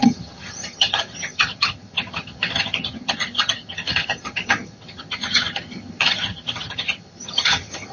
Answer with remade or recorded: remade